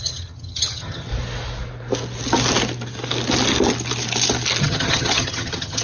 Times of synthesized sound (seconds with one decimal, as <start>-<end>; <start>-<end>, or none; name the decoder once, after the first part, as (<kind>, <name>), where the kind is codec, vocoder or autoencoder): 0.0-1.1 (vocoder, HiFi-GAN); 4.6-5.8

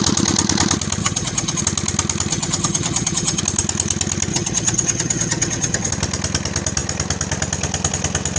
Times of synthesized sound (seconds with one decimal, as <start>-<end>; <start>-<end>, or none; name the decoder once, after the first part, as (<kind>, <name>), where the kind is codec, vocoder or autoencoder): 1.0-1.6 (vocoder, HiFi-GAN); 2.3-3.4; 4.3-5.9

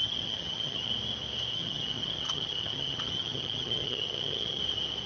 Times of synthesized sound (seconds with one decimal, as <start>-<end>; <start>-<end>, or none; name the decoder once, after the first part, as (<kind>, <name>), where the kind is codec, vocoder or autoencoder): 0.0-0.9 (vocoder, HiFi-GAN); 1.5-4.6

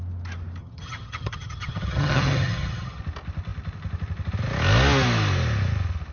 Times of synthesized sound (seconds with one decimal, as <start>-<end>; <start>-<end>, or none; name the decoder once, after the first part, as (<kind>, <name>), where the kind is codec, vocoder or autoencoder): 0.6-3.0 (vocoder, HiFi-GAN)

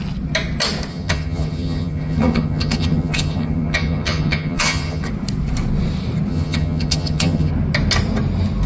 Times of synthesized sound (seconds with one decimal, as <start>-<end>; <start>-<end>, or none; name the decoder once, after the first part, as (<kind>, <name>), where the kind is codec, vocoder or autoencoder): 0.9-5.1 (vocoder, HiFi-GAN); 6.3-7.5

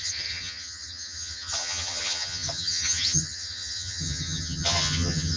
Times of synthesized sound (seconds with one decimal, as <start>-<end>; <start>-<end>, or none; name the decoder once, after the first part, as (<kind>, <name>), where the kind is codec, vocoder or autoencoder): 0.0-5.4 (vocoder, HiFi-GAN)

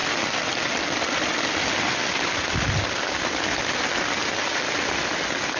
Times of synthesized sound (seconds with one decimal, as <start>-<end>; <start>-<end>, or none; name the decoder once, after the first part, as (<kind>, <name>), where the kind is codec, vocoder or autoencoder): none

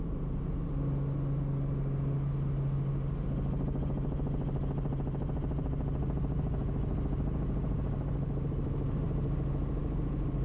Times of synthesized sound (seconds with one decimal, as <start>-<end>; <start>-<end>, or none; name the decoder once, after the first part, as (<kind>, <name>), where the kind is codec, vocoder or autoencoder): none